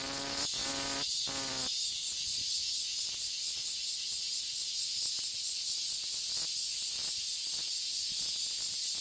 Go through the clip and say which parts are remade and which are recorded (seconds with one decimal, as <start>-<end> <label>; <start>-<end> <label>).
0.0-9.0 recorded